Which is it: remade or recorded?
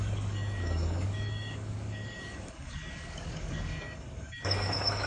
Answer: remade